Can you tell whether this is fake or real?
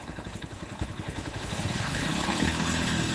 fake